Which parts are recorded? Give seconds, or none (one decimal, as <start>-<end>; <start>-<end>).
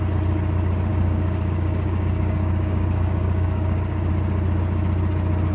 0.0-0.9; 4.1-5.5